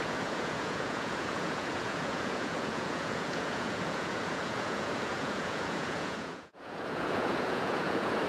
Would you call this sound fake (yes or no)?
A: yes